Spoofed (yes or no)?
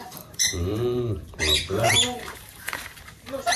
yes